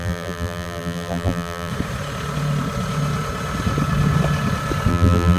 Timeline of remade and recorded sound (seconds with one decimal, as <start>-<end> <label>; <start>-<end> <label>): 0.0-1.7 remade; 1.7-4.9 recorded; 4.9-5.4 remade